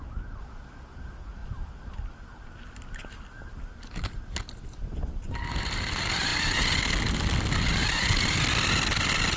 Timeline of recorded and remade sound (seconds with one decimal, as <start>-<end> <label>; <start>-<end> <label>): 0.0-9.4 recorded